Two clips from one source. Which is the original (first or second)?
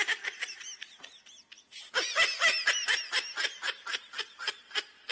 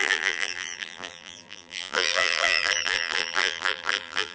first